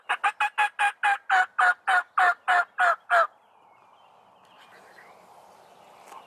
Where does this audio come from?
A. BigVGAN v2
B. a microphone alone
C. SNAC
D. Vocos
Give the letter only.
B